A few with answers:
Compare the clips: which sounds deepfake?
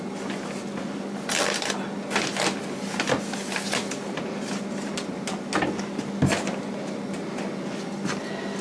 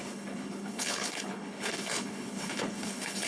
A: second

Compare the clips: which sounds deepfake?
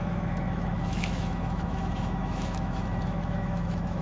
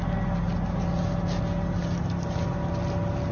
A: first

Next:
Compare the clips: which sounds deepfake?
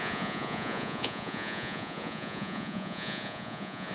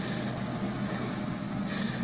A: first